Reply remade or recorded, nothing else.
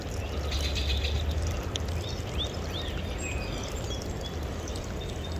recorded